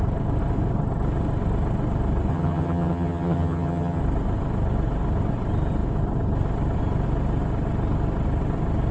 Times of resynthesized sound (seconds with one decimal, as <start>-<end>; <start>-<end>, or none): 2.3-4.0